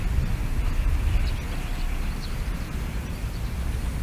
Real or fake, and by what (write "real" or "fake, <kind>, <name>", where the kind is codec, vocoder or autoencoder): real